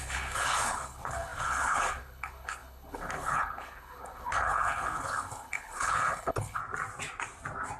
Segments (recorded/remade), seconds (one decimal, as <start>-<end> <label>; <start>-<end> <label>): 0.0-6.6 remade; 6.6-7.8 recorded